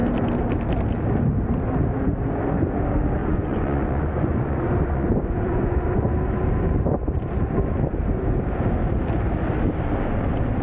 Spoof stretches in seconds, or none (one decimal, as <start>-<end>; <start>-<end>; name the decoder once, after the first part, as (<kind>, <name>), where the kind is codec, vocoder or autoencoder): 3.2-6.1 (vocoder, Vocos)